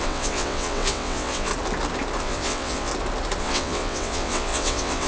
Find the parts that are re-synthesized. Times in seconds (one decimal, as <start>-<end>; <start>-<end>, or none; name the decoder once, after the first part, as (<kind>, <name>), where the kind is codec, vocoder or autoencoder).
0.0-1.5 (vocoder, WaveNeXt); 2.2-2.9; 3.4-5.1